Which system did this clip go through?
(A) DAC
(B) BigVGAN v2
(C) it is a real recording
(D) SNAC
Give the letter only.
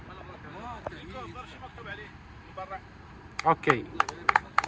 C